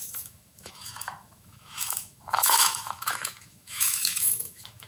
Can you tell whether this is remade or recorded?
remade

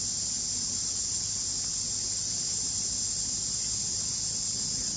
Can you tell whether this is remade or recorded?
recorded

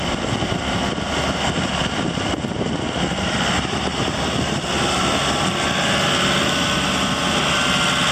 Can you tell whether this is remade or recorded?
recorded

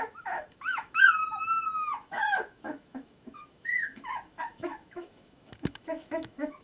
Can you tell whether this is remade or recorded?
remade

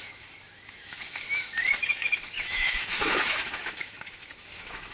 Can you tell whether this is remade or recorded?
remade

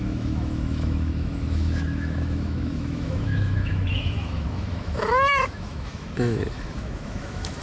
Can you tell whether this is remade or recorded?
remade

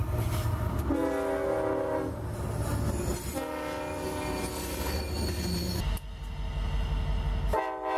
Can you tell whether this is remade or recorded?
recorded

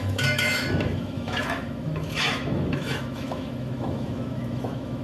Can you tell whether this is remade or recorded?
remade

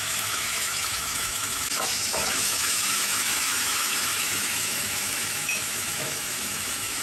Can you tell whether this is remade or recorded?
remade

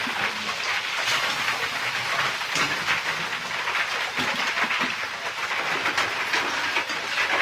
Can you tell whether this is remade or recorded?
recorded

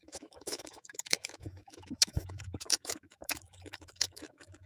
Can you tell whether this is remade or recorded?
remade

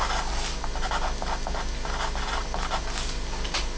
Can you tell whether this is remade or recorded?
recorded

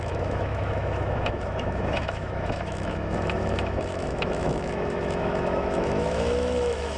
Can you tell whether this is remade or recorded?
remade